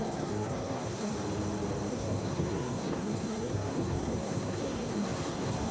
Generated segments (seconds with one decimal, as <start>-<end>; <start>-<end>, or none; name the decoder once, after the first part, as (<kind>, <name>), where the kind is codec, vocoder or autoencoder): 0.0-1.1 (codec, SNAC); 1.9-5.7